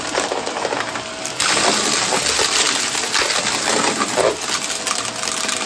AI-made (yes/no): no